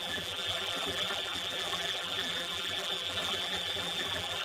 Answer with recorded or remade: remade